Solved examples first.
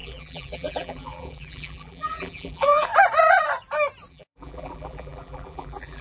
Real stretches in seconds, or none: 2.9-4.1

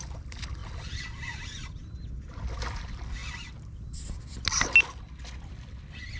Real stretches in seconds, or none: 0.0-6.2

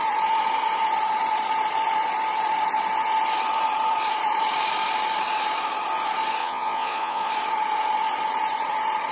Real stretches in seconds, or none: 0.0-6.4; 7.3-9.1